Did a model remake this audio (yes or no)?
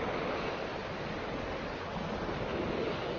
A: no